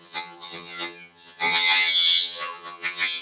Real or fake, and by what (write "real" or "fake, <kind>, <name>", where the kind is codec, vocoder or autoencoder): fake, vocoder, HiFi-GAN